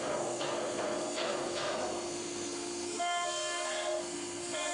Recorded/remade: remade